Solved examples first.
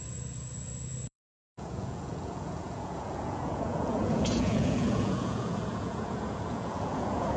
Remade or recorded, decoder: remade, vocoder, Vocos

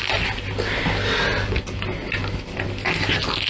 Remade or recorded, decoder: recorded